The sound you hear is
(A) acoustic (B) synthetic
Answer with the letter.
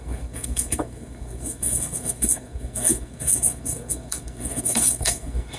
B